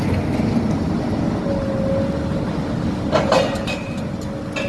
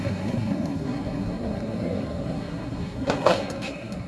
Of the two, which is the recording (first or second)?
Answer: first